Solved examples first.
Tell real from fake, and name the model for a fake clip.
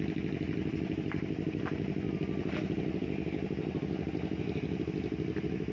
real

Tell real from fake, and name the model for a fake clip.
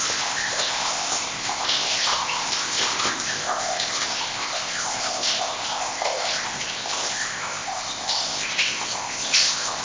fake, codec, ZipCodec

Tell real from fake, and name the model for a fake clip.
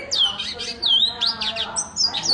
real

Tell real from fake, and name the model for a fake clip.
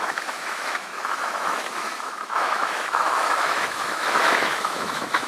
fake, autoencoder, DAC-VAE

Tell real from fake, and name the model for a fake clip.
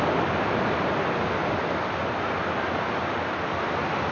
real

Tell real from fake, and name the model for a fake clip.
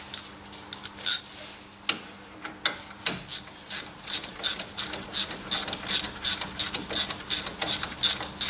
real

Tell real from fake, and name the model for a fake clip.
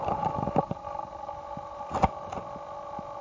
real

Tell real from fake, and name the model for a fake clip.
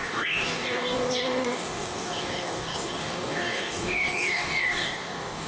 fake, codec, DAC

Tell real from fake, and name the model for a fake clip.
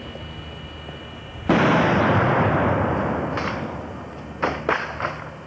real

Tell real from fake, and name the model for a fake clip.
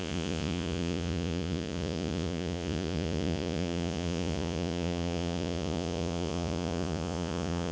fake, vocoder, Vocos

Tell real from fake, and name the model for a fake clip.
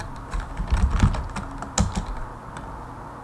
real